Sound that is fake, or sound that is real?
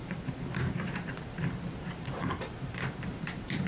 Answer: fake